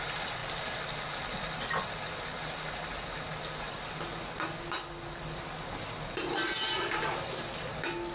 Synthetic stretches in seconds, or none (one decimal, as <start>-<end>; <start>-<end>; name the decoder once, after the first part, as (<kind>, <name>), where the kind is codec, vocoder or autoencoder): none